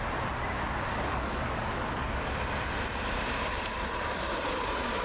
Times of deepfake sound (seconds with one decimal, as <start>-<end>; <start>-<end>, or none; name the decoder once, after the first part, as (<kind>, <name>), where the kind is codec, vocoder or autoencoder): 0.9-2.3 (codec, DAC)